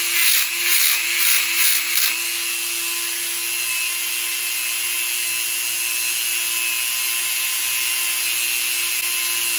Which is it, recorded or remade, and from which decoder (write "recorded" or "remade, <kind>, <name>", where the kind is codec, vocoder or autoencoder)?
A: recorded